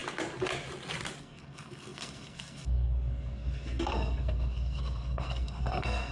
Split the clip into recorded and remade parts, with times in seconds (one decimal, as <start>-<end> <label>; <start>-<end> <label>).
0.0-1.2 recorded; 1.2-6.1 remade